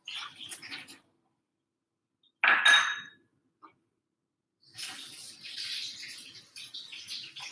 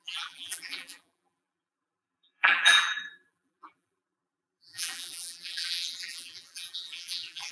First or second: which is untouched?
first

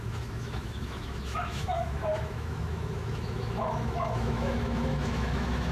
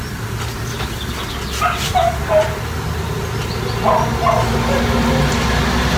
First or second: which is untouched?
second